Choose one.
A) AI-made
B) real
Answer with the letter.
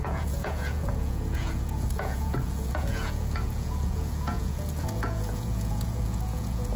A